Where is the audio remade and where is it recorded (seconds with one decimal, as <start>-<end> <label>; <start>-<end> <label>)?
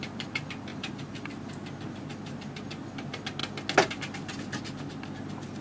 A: 0.0-0.7 recorded; 0.7-1.3 remade; 1.3-5.6 recorded